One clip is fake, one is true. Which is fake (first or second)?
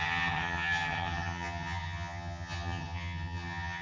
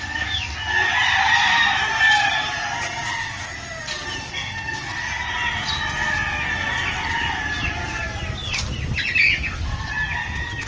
first